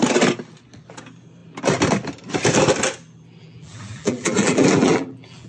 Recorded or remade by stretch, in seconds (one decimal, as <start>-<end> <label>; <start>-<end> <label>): 0.0-3.4 recorded; 3.4-5.5 remade